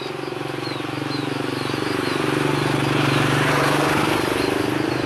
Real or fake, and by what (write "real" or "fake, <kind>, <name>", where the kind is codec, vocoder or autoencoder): real